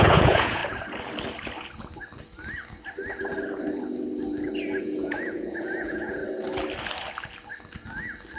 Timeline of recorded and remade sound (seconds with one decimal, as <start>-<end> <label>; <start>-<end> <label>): 0.0-0.6 remade; 0.6-4.8 recorded; 4.8-6.2 remade; 6.2-8.4 recorded